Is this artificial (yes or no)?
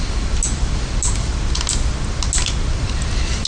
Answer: no